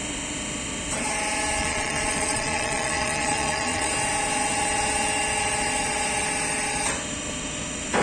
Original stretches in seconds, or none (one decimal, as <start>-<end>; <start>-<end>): 0.0-1.6; 3.9-8.0